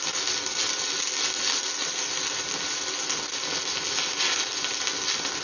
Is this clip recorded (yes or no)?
yes